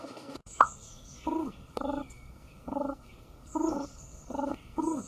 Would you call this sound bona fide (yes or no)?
no